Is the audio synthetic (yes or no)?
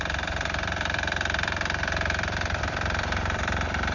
yes